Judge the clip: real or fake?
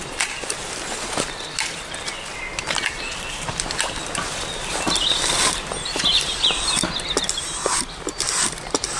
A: real